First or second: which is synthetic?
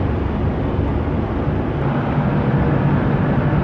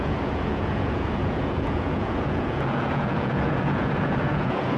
second